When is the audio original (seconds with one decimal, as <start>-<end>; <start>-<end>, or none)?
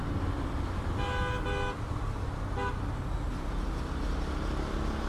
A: 0.0-5.1